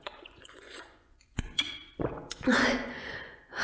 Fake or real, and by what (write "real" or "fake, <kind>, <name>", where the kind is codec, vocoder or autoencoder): fake, vocoder, Vocos